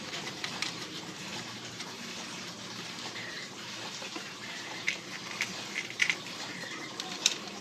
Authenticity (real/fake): fake